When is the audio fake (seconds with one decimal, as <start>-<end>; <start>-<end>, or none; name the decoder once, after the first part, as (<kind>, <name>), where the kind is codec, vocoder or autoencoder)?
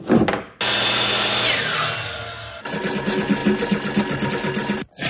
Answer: none